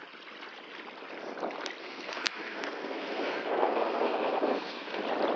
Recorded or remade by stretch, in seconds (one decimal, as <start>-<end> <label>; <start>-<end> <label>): 0.0-1.8 recorded; 1.8-5.0 remade; 5.0-5.4 recorded